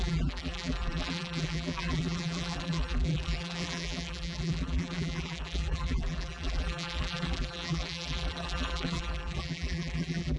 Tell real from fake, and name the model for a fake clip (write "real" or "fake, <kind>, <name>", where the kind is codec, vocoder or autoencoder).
fake, vocoder, BigVGAN v2